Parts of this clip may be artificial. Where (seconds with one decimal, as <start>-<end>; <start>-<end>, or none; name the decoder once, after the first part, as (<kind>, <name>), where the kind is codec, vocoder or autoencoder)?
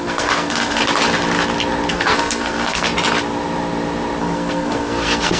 0.0-0.8 (codec, SNAC); 1.9-2.9; 4.2-5.4